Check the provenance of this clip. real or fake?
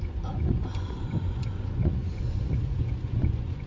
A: fake